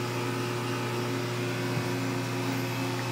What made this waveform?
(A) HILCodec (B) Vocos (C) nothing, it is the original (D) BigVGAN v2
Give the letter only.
C